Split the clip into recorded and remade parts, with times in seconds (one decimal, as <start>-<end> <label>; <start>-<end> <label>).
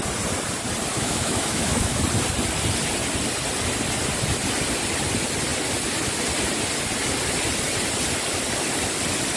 0.0-0.9 recorded; 0.9-2.0 remade; 2.0-9.4 recorded